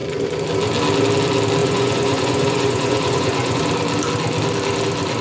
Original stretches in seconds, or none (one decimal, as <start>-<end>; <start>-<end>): 0.0-1.6; 3.6-5.2